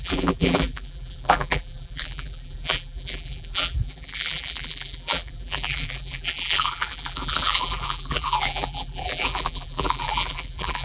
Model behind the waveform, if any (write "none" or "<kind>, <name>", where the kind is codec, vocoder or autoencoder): vocoder, BigVGAN v2